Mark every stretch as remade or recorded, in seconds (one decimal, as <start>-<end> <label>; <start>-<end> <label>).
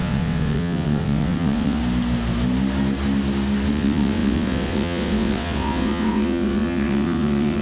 0.0-1.8 remade; 1.8-3.7 recorded; 3.7-7.6 remade